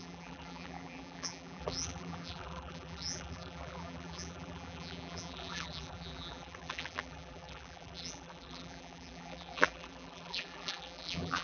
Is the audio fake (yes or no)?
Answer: yes